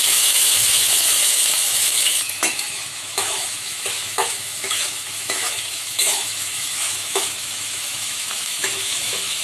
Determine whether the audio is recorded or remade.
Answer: remade